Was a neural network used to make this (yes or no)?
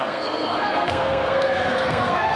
yes